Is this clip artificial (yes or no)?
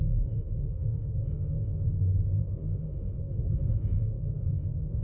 yes